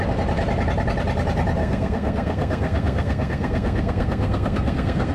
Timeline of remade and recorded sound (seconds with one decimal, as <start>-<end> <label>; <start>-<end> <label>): 0.0-1.6 recorded; 1.6-5.1 remade